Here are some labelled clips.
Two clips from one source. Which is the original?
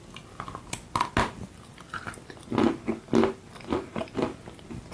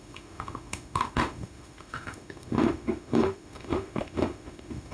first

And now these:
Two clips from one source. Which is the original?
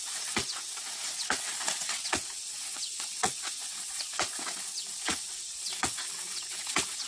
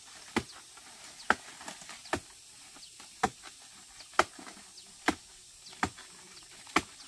second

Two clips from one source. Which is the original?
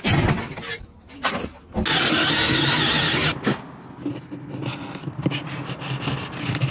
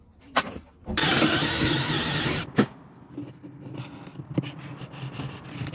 first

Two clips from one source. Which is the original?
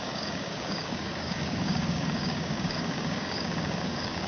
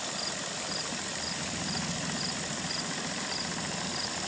second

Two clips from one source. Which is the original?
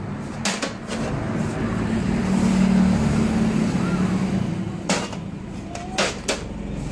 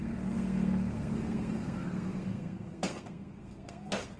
first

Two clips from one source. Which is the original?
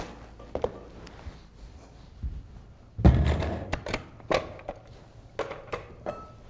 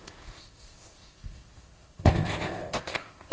first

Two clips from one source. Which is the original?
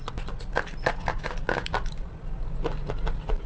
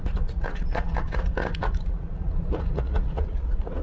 first